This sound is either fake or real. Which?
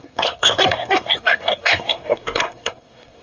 fake